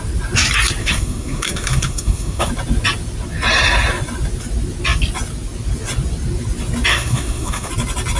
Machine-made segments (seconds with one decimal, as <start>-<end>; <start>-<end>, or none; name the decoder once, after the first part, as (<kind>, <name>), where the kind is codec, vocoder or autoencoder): 0.8-2.5 (codec, SNAC); 6.9-7.7